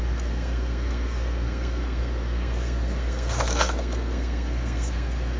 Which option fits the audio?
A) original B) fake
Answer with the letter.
B